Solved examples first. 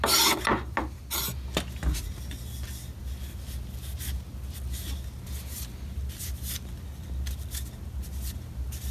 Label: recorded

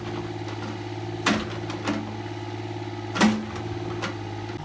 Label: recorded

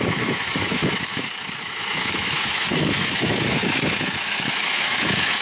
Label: remade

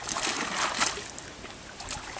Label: recorded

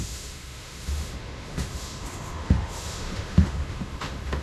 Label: remade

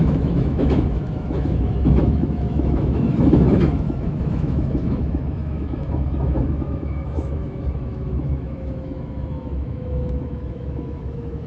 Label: remade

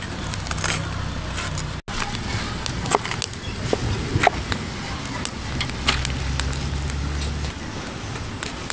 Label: recorded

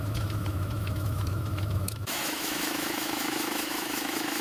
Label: remade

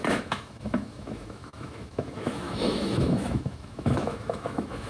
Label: remade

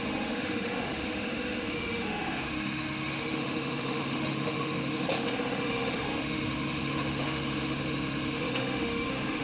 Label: remade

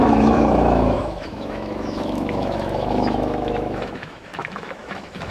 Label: remade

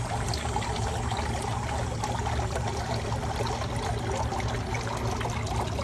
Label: recorded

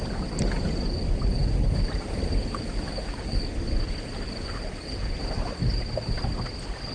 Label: recorded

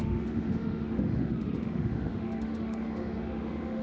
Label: remade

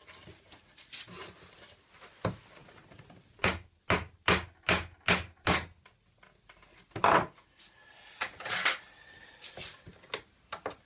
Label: recorded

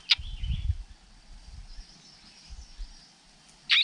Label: recorded